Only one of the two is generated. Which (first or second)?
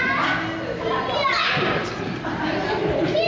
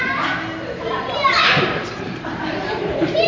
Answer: second